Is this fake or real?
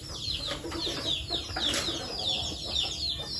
real